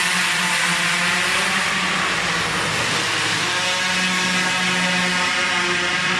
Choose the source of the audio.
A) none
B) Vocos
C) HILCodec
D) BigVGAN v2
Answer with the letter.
A